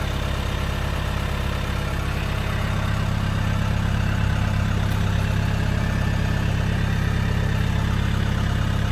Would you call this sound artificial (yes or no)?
no